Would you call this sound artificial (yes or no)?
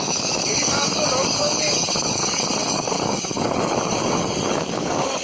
yes